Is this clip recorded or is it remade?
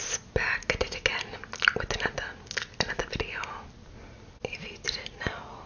recorded